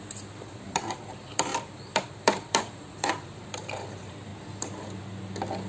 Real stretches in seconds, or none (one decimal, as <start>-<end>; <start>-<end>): 4.3-5.7